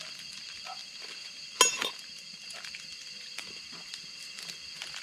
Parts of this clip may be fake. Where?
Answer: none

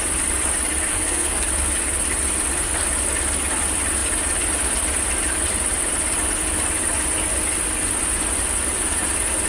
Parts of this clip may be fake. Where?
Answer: 0.9-1.5 (codec, SNAC)